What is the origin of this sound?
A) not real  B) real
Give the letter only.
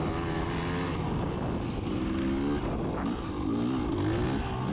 B